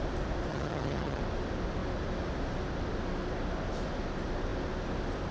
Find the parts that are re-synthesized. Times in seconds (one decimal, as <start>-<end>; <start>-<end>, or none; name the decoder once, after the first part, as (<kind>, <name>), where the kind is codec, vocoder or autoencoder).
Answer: 0.5-1.2 (vocoder, HiFi-GAN)